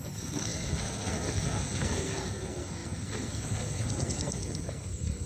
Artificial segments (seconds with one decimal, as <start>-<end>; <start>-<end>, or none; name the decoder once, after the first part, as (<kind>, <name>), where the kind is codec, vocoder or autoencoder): 0.0-5.3 (codec, SNAC)